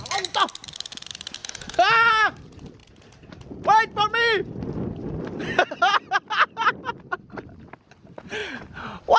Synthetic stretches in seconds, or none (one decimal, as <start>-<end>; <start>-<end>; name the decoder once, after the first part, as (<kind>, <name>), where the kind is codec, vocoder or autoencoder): 1.4-2.1 (autoencoder, DAC-VAE)